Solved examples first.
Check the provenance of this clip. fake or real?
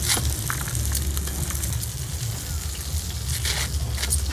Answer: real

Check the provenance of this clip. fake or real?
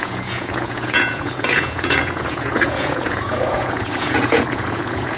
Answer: fake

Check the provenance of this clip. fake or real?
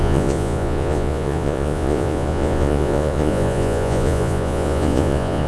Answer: fake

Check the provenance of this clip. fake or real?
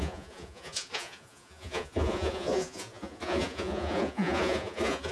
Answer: fake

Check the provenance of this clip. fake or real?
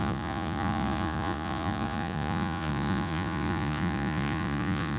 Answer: fake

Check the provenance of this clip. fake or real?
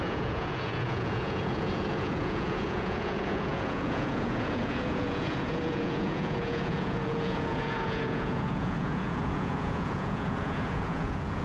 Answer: fake